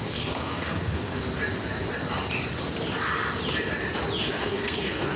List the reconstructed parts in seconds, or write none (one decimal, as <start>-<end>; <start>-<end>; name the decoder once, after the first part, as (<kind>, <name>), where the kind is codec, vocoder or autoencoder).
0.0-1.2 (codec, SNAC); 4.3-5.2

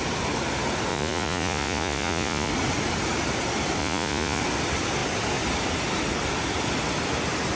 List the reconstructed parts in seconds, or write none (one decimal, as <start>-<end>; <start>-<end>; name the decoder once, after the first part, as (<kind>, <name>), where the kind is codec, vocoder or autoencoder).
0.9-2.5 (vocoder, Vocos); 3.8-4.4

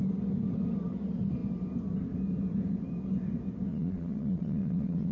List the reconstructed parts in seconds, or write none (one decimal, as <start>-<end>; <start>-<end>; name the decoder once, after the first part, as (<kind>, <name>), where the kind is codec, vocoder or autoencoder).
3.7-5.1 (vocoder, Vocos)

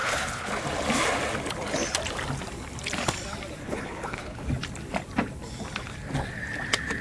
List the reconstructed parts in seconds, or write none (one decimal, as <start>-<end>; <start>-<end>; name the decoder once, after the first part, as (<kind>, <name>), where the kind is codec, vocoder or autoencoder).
0.0-0.5 (codec, HILCodec); 3.6-4.5

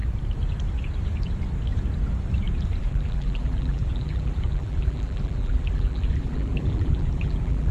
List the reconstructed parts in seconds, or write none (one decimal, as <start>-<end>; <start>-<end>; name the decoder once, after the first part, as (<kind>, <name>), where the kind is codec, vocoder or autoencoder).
2.8-7.7 (vocoder, BigVGAN v2)

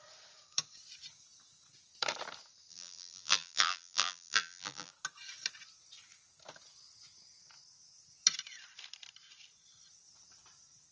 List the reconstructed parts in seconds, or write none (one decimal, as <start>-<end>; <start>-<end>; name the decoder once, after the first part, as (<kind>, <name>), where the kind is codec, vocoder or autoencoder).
2.7-4.9 (vocoder, BigVGAN v2)